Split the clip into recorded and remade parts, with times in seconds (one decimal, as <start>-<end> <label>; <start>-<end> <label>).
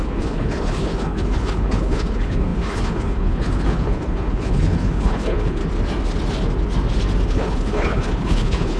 0.0-5.6 remade; 5.6-7.3 recorded; 7.3-8.8 remade